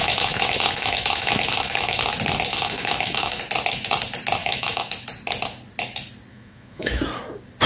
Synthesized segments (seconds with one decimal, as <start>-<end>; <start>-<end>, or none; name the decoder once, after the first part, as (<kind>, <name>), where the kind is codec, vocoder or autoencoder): 0.0-2.0 (autoencoder, DAC-VAE); 2.5-3.4; 4.4-4.9; 6.3-7.0